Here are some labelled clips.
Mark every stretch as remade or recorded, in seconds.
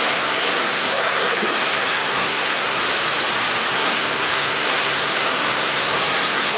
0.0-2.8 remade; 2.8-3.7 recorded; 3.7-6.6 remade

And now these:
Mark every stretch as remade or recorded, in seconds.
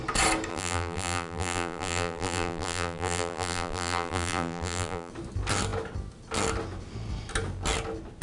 0.0-0.5 recorded; 0.5-5.1 remade; 5.1-8.2 recorded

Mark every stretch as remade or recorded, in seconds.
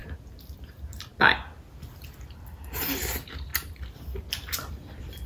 0.0-0.6 recorded; 0.6-1.1 remade; 1.1-2.1 recorded; 2.1-3.5 remade; 3.5-4.3 recorded; 4.3-5.3 remade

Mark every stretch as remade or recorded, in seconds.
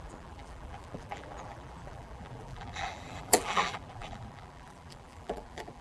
0.0-5.8 remade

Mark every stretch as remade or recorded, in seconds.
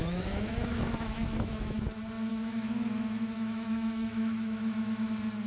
0.0-1.8 remade; 1.8-2.3 recorded; 2.3-5.1 remade; 5.1-5.5 recorded